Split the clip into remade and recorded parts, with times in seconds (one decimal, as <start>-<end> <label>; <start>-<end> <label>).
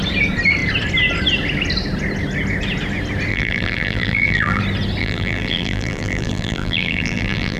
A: 0.0-3.3 recorded; 3.3-4.6 remade; 4.6-5.0 recorded; 5.0-7.6 remade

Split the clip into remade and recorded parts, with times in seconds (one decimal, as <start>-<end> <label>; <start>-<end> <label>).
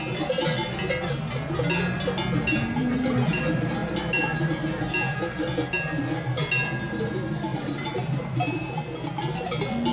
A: 0.0-2.8 recorded; 2.8-3.4 remade; 3.4-7.5 recorded; 7.5-8.6 remade; 8.6-9.9 recorded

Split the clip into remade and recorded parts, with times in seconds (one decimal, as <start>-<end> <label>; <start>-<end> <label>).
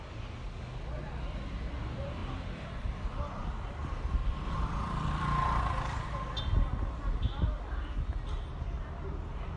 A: 0.0-2.2 recorded; 2.2-6.0 remade; 6.0-9.6 recorded